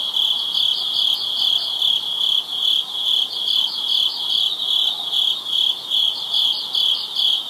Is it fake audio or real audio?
real